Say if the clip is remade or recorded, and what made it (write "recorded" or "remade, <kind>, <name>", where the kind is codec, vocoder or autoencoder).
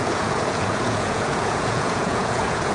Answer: remade, vocoder, Vocos